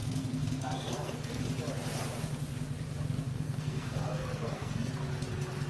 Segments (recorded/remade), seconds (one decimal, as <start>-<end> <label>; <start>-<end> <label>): 0.0-1.4 remade; 1.4-3.3 recorded; 3.3-4.9 remade; 4.9-5.7 recorded